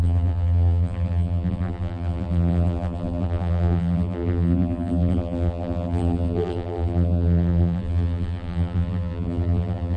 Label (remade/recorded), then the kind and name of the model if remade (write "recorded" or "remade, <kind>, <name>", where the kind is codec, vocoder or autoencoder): remade, vocoder, BigVGAN v2